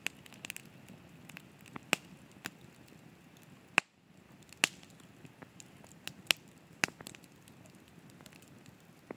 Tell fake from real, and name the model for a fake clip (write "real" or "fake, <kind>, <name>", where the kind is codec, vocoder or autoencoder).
real